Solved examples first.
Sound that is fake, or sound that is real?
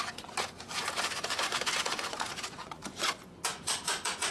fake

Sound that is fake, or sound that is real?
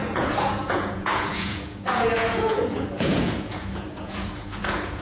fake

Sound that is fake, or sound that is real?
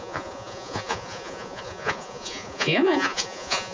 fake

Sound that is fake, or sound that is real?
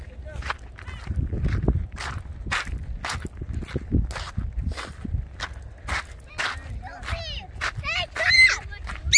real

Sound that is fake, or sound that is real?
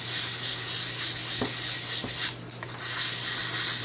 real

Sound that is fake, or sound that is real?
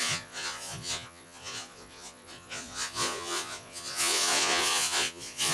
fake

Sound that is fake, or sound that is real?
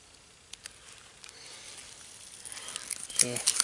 real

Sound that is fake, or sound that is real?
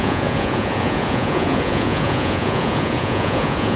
fake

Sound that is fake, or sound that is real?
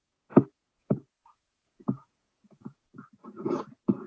fake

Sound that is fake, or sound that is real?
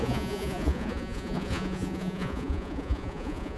fake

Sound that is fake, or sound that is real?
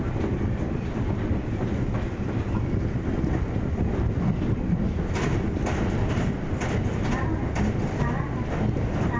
real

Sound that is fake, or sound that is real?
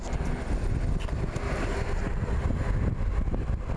real